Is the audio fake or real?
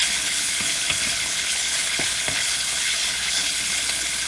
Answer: fake